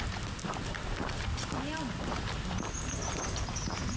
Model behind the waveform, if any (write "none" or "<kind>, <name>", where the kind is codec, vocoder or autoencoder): none